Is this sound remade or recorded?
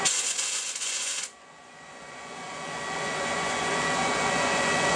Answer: remade